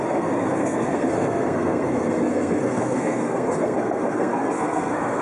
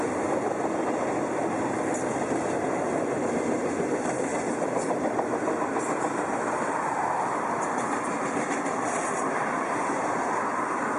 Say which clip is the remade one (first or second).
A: first